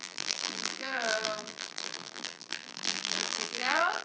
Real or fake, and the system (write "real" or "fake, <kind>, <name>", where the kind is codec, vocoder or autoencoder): fake, vocoder, BigVGAN v2